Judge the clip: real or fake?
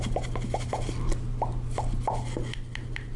real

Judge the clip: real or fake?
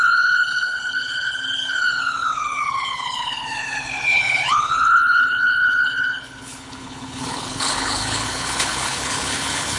fake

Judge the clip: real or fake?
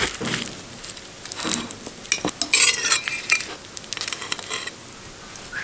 real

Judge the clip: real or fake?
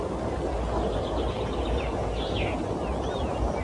real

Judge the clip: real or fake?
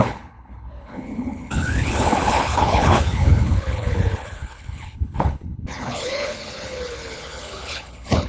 fake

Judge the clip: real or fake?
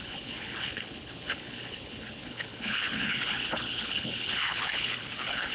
fake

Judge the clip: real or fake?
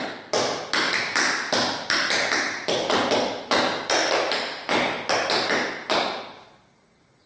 real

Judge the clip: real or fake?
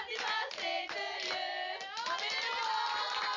real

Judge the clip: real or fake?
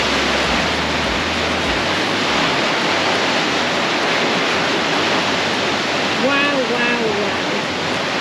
real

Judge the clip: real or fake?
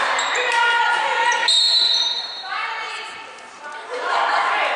real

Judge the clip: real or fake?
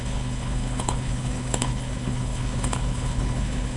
fake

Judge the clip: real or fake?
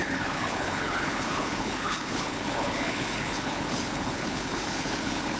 fake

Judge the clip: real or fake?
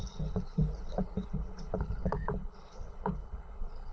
fake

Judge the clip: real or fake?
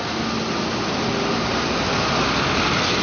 real